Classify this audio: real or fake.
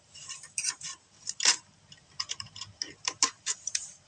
fake